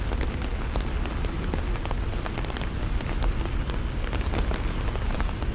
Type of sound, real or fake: real